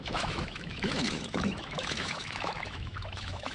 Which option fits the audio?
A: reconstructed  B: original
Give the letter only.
A